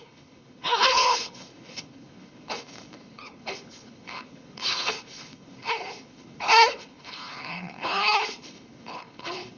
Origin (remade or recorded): remade